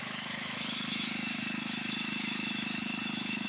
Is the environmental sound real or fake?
fake